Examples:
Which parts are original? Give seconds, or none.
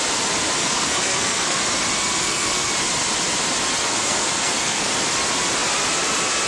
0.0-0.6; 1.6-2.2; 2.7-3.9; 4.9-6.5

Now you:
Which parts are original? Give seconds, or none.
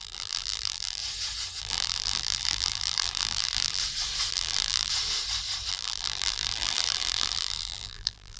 1.0-1.6; 3.8-4.3; 4.9-5.7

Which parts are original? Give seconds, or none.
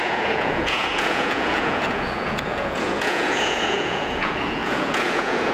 none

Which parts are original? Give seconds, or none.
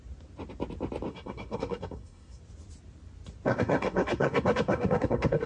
0.0-1.1; 2.4-3.5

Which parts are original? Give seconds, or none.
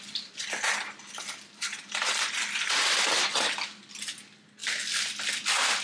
0.0-5.8